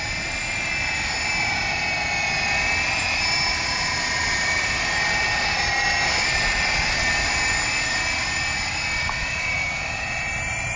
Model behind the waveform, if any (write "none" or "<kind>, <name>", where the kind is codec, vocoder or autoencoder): none